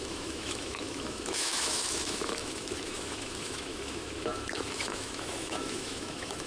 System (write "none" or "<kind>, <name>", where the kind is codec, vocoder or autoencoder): autoencoder, DAC-VAE